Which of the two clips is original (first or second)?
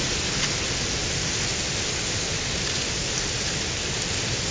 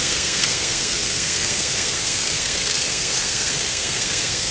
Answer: first